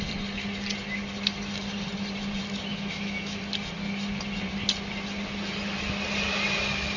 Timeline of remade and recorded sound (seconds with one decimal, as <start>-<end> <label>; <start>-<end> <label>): 0.0-2.7 recorded; 2.7-3.4 remade; 3.4-7.0 recorded